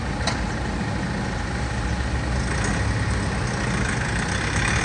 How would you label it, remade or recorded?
recorded